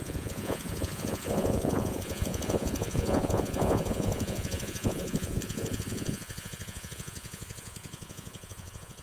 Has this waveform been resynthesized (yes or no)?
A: yes